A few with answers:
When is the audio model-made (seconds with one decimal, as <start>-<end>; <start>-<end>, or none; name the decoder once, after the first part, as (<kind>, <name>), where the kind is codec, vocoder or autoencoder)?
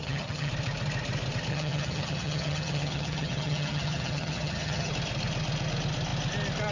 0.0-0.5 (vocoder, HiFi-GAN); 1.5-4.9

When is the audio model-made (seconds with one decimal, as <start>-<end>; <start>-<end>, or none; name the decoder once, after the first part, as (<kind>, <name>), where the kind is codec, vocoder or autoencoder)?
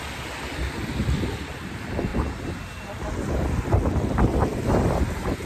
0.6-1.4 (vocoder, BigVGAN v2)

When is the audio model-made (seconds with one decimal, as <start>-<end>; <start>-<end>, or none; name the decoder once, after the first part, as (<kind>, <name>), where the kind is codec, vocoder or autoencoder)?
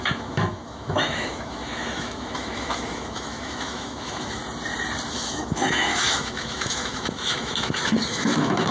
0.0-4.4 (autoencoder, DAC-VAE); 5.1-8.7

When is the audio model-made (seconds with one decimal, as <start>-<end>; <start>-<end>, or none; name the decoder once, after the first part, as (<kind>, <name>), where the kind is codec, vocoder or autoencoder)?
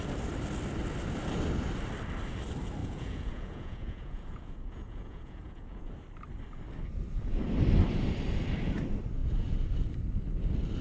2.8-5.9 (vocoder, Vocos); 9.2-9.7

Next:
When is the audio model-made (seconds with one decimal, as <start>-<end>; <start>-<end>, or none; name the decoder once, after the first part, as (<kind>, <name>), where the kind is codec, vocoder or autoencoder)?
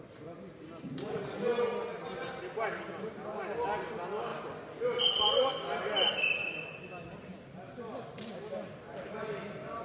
none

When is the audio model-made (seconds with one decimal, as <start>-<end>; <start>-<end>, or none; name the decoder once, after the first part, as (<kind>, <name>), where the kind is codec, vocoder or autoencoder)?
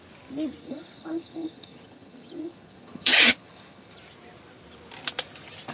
0.6-4.0 (vocoder, HiFi-GAN)